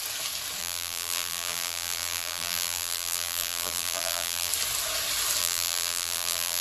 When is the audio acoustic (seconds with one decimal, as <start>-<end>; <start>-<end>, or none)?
0.0-0.6; 4.5-5.4